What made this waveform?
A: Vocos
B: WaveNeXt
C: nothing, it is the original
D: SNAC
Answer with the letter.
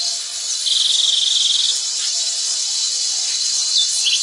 C